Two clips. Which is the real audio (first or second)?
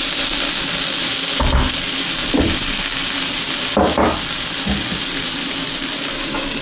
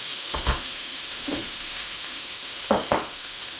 first